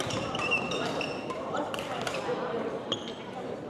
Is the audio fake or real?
fake